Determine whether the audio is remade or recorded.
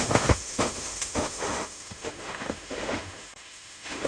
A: remade